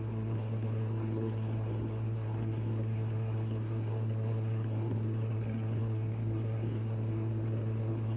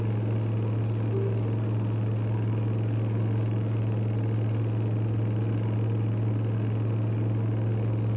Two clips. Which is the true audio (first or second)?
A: second